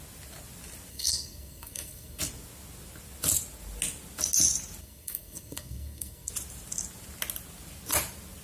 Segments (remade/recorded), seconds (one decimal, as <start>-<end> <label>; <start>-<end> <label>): 0.0-0.9 recorded; 0.9-2.2 remade; 2.2-4.8 recorded; 4.8-6.3 remade; 6.3-8.4 recorded